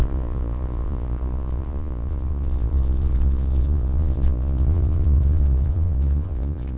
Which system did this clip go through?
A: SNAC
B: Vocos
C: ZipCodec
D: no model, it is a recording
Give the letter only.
B